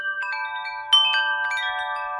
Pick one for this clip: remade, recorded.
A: recorded